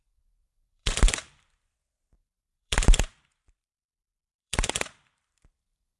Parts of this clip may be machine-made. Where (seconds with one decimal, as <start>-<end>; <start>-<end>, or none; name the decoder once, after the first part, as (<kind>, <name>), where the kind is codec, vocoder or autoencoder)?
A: 0.0-6.0 (vocoder, BigVGAN v2)